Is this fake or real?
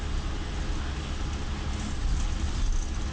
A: real